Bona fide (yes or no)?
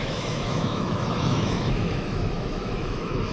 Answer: no